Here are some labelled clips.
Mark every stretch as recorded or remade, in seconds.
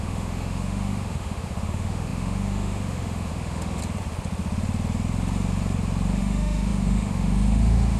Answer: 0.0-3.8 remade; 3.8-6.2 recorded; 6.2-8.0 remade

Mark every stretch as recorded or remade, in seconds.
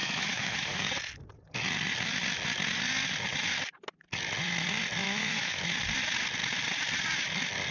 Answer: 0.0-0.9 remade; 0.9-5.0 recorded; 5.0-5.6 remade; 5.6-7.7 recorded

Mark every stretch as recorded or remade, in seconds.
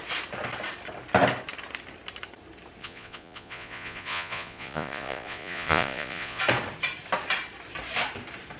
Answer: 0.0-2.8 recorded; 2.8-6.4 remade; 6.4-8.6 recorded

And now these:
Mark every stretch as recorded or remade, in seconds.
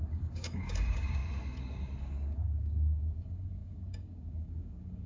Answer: 0.0-1.2 remade; 1.2-2.0 recorded; 2.0-5.1 remade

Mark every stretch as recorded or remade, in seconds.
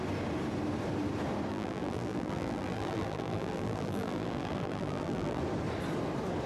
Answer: 0.0-1.5 recorded; 1.5-5.4 remade; 5.4-6.5 recorded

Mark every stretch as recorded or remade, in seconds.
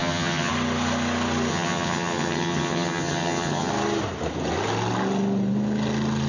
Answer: 0.0-0.5 remade; 0.5-1.5 recorded; 1.5-3.7 remade; 3.7-6.3 recorded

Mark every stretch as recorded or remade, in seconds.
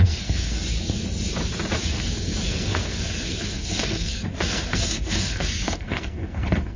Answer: 0.0-0.6 remade; 0.6-1.8 recorded; 1.8-6.8 remade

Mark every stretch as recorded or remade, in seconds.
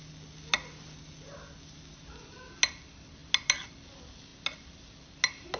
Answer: 0.0-5.6 recorded